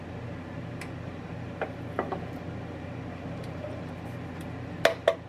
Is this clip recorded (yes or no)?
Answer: yes